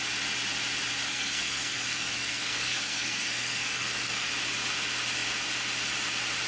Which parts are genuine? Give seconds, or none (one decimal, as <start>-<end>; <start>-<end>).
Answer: 0.0-1.1; 4.3-6.5